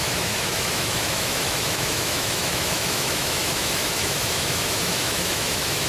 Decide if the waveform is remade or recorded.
remade